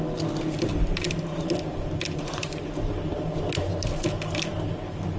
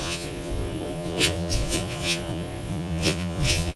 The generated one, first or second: second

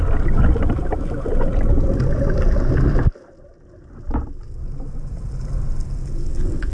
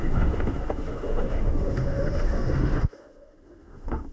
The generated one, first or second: second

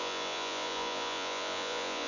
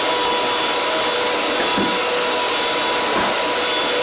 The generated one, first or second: first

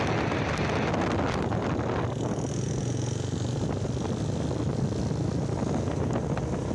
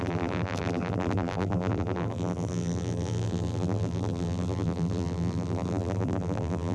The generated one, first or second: second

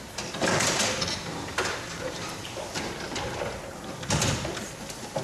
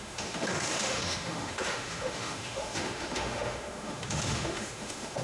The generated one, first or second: second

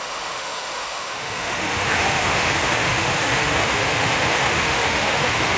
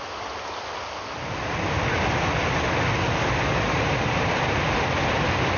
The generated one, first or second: first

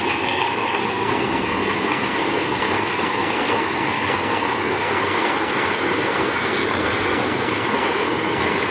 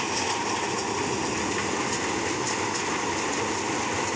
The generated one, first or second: first